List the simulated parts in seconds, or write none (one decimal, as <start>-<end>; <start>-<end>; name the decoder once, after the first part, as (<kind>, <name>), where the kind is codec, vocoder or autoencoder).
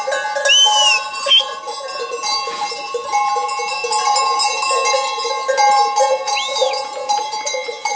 none